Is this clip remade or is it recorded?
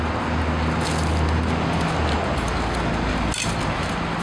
recorded